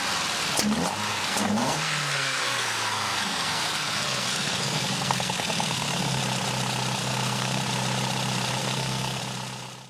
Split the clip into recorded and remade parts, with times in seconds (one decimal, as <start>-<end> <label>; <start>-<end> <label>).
0.0-1.1 recorded; 1.1-6.2 remade; 6.2-7.0 recorded; 7.0-7.6 remade; 7.6-8.6 recorded; 8.6-9.2 remade; 9.2-9.9 recorded